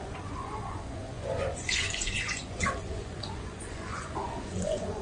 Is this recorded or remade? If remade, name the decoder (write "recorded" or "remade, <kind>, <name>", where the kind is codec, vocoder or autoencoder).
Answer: remade, vocoder, Vocos